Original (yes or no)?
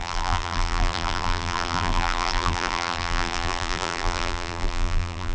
no